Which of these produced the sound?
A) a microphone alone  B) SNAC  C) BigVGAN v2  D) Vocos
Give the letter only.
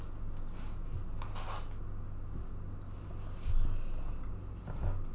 A